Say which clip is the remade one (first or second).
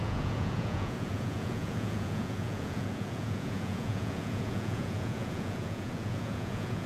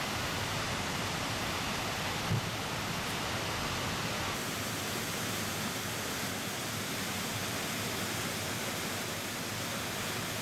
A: first